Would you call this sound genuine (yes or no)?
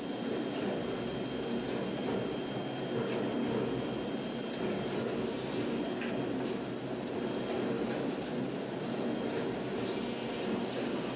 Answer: yes